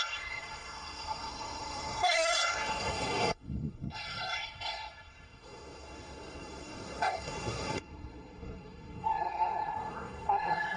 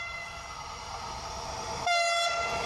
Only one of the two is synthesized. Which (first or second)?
first